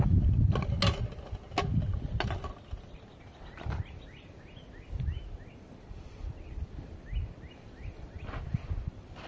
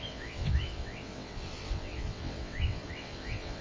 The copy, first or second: second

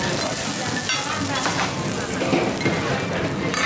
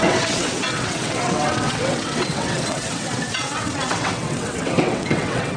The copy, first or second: second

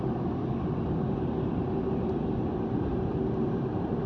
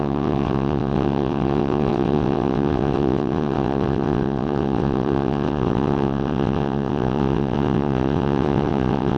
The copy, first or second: second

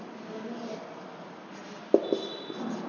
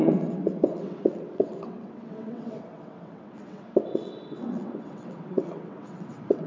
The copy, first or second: second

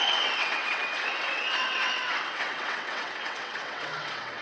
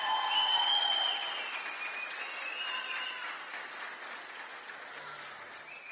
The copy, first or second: first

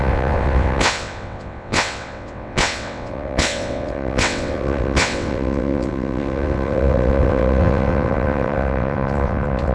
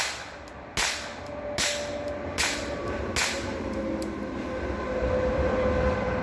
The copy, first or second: first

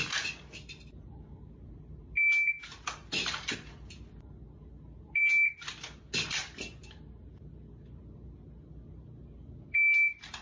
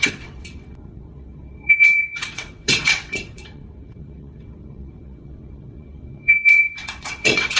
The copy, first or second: second